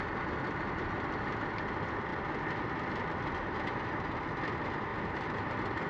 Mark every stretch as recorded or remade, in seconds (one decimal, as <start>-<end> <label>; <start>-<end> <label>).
0.0-4.9 recorded; 4.9-5.5 remade; 5.5-5.9 recorded